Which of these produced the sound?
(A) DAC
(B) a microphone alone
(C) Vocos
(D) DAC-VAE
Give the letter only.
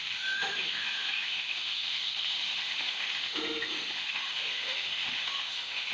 D